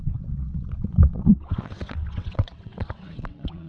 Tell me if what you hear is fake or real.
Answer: fake